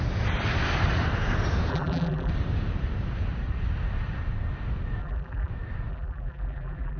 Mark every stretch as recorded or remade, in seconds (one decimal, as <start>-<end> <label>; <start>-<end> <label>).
0.0-1.7 recorded; 1.7-2.3 remade; 2.3-5.0 recorded; 5.0-5.5 remade; 5.5-5.9 recorded; 5.9-7.0 remade

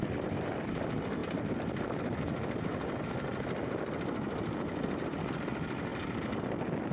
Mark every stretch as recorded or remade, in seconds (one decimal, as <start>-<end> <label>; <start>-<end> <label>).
0.0-6.9 recorded

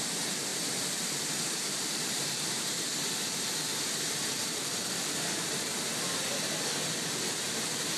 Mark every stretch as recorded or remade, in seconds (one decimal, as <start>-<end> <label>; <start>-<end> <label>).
0.0-3.7 remade; 3.7-4.3 recorded; 4.3-5.7 remade; 5.7-7.5 recorded; 7.5-8.0 remade

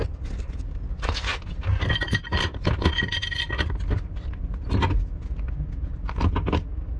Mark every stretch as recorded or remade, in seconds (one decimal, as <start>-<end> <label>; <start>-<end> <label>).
0.0-7.0 recorded

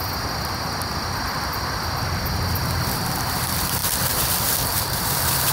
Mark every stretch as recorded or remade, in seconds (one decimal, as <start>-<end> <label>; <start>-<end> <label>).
0.0-5.5 remade

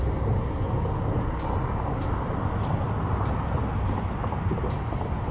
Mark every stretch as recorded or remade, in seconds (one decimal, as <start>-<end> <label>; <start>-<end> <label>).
0.0-5.3 recorded

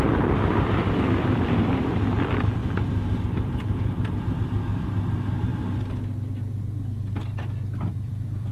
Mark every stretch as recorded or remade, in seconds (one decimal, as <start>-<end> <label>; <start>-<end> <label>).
0.0-2.6 remade; 2.6-3.2 recorded; 3.2-5.5 remade; 5.5-6.6 recorded; 6.6-8.5 remade

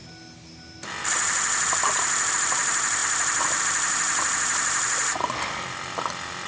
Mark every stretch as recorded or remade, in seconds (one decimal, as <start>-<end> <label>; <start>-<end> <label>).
0.0-2.3 recorded; 2.3-6.5 remade